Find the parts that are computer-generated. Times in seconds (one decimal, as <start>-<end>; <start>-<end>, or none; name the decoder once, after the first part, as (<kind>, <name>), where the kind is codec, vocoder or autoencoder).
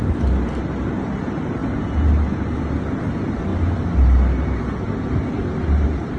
none